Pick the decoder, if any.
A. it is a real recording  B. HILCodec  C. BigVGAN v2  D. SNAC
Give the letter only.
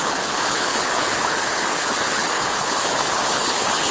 B